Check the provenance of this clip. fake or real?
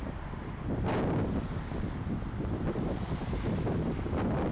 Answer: real